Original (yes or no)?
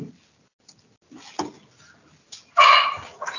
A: yes